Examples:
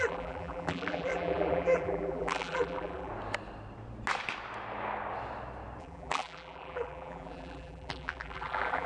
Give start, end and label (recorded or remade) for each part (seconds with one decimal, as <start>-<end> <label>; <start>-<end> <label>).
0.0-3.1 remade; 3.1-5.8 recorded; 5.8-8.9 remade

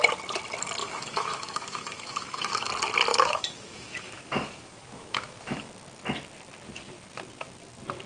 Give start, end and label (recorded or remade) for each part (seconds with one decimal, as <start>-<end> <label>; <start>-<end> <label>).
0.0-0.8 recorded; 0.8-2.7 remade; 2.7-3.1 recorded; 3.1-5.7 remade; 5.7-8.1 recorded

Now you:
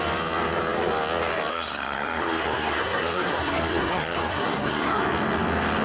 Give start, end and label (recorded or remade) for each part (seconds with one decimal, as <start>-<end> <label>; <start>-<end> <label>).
0.0-1.5 recorded; 1.5-5.0 remade; 5.0-5.8 recorded

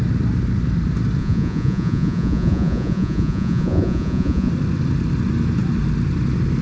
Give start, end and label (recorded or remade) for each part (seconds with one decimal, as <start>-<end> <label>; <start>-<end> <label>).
0.0-1.2 recorded; 1.2-4.5 remade; 4.5-6.6 recorded

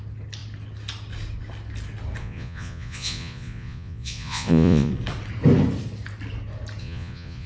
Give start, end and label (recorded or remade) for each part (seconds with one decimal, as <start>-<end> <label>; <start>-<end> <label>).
0.0-2.2 recorded; 2.2-4.9 remade; 4.9-6.8 recorded; 6.8-7.5 remade

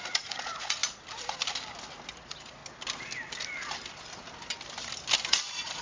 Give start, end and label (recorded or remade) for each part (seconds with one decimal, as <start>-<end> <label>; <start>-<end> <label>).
0.0-0.8 remade; 0.8-2.2 recorded; 2.2-2.6 remade; 2.6-5.3 recorded; 5.3-5.8 remade

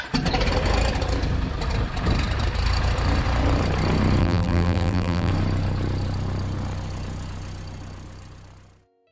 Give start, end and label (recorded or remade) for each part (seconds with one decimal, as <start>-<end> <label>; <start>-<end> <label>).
0.0-4.2 recorded; 4.2-5.3 remade; 5.3-9.1 recorded